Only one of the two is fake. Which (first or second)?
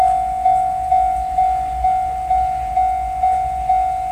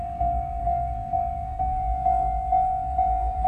second